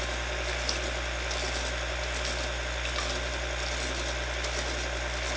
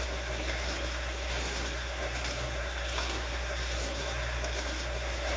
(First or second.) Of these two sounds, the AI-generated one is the second